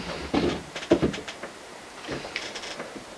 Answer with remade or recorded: remade